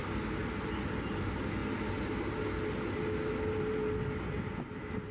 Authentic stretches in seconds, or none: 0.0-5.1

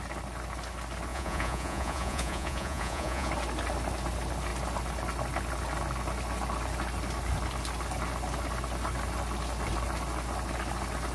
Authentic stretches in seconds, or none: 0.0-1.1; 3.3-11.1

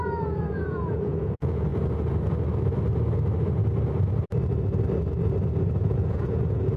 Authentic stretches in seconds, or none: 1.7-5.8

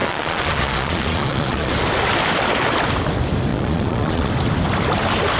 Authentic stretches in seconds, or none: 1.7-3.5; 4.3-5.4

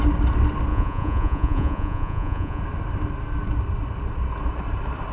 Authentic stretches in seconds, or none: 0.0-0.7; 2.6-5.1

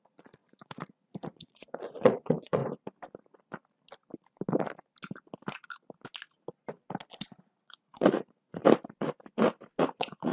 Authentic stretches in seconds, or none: 2.6-7.4; 8.6-9.8